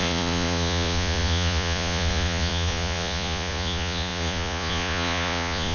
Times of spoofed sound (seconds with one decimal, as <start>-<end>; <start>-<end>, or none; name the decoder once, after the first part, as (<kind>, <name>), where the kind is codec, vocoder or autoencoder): 0.0-5.7 (vocoder, Vocos)